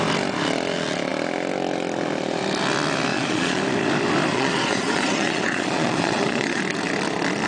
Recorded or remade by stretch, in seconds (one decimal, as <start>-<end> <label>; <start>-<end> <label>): 0.0-3.1 recorded; 3.1-3.6 remade; 3.6-4.3 recorded; 4.3-6.6 remade; 6.6-7.5 recorded